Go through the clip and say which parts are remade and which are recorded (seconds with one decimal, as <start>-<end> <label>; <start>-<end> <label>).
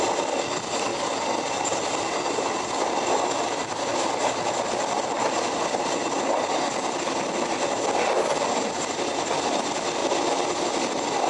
0.0-3.9 remade; 3.9-4.6 recorded; 4.6-10.0 remade; 10.0-11.3 recorded